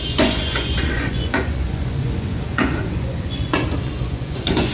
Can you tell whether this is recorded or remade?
remade